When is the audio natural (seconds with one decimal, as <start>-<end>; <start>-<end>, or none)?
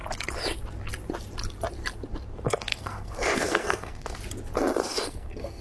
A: 0.0-2.7; 4.2-4.8